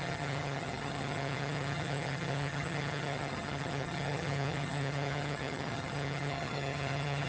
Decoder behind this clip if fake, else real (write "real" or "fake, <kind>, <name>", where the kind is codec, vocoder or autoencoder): fake, vocoder, HiFi-GAN